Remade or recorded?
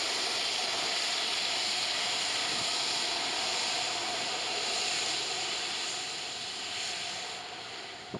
remade